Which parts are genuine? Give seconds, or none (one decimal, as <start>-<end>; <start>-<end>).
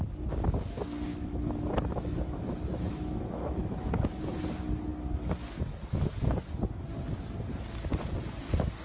0.0-1.1; 4.2-8.8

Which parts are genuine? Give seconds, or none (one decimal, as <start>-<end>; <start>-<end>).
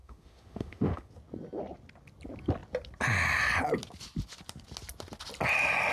1.1-5.9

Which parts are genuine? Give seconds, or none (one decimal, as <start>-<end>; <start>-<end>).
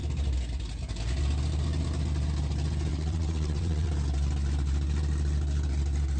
0.0-2.9; 3.9-6.2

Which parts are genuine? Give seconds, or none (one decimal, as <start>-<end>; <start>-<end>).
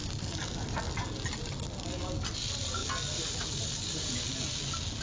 0.0-5.0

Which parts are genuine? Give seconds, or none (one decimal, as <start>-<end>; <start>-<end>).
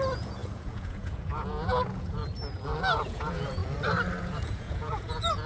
2.2-2.8; 3.6-4.2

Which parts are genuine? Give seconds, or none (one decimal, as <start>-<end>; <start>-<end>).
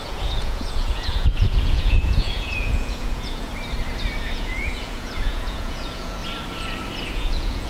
3.5-4.2; 6.2-7.1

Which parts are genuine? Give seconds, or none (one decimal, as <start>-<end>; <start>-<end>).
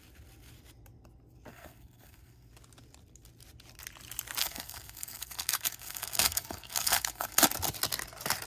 0.0-1.5; 2.5-4.4; 7.3-8.5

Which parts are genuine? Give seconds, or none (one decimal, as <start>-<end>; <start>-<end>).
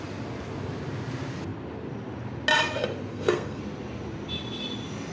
0.0-3.1; 3.6-5.1